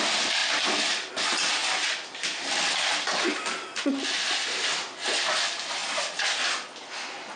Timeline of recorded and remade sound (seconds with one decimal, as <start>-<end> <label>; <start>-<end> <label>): 0.0-7.4 recorded